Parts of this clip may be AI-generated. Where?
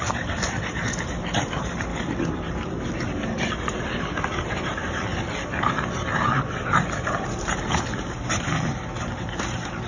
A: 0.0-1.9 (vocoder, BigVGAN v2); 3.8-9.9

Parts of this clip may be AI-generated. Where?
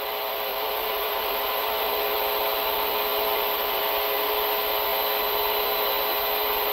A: 0.5-1.9 (vocoder, BigVGAN v2)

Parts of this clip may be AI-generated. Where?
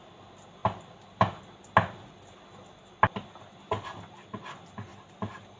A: 4.9-5.6 (vocoder, BigVGAN v2)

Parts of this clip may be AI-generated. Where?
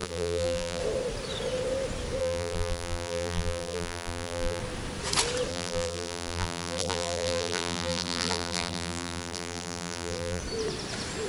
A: 0.0-0.8 (vocoder, BigVGAN v2); 2.2-4.6; 5.5-10.4